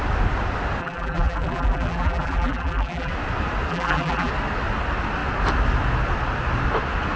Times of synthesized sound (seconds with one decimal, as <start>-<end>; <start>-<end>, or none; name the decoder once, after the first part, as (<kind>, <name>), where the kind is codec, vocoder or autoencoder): 0.8-3.1 (vocoder, BigVGAN v2); 3.7-4.3